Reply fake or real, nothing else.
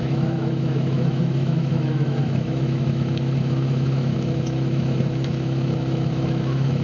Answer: fake